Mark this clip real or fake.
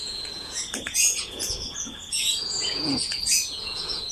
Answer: fake